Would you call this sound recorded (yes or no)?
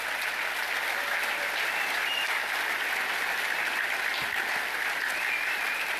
no